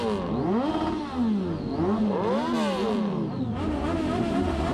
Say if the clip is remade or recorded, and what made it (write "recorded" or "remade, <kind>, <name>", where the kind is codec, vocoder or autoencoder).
recorded